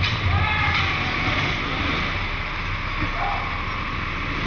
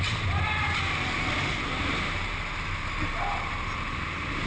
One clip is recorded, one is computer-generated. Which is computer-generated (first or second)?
second